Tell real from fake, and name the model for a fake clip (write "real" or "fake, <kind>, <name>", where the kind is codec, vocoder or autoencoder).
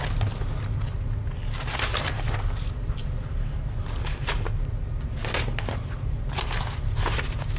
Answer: real